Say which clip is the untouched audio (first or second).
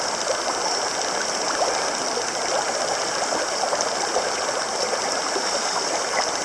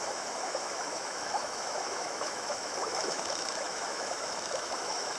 first